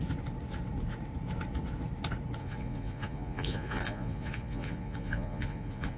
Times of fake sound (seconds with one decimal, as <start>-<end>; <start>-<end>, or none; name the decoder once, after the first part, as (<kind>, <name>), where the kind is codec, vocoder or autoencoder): 2.4-6.0 (vocoder, Vocos)